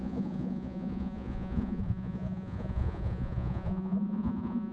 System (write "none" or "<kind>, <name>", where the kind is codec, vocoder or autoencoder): vocoder, Vocos